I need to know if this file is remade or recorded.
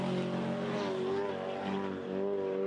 recorded